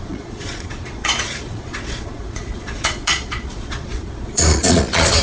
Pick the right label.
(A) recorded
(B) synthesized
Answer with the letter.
B